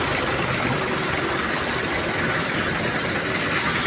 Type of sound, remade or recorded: recorded